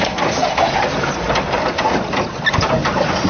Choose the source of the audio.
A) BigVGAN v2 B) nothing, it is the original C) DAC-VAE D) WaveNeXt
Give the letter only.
B